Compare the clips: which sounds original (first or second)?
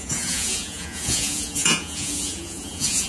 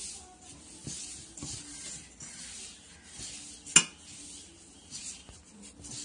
second